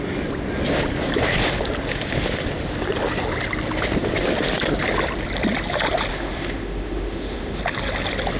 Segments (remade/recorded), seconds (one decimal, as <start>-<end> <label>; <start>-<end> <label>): 0.0-6.1 recorded; 6.1-7.6 remade; 7.6-8.4 recorded